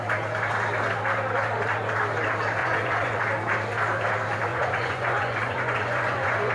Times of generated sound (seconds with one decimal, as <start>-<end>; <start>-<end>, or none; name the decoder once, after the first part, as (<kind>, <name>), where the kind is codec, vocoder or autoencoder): 2.6-3.2 (vocoder, Vocos); 4.5-6.5

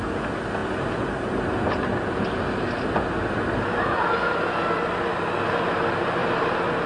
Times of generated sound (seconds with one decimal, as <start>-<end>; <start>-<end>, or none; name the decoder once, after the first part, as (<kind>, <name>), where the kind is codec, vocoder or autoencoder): none

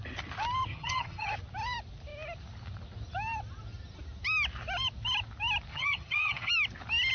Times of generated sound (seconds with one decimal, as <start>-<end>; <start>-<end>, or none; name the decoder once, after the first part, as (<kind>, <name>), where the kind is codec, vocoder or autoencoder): 0.7-1.3 (vocoder, HiFi-GAN); 5.7-6.5

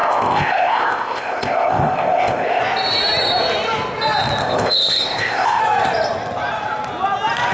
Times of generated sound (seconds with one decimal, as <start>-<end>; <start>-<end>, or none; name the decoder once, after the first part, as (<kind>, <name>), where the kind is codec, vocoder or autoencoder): 0.0-2.6 (codec, ZipCodec); 4.4-5.6

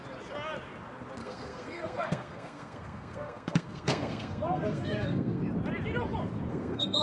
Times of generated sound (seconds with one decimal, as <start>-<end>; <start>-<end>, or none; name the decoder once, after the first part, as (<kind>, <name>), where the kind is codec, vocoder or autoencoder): 1.2-5.4 (codec, SNAC); 6.5-7.0

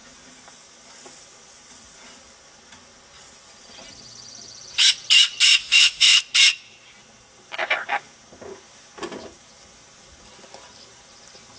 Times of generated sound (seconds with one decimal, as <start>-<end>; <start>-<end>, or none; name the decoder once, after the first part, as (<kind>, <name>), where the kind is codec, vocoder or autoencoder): 5.6-6.2 (autoencoder, DAC-VAE)

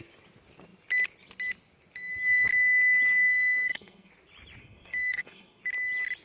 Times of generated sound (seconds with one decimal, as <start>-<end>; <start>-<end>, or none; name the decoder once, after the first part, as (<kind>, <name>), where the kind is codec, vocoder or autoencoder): 3.2-4.1 (codec, SNAC); 4.6-5.6

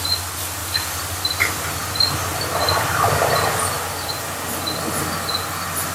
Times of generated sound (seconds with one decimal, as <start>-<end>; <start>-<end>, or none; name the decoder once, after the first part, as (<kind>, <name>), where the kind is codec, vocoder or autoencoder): none